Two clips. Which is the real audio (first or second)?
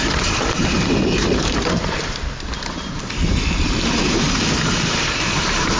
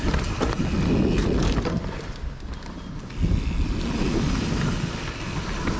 second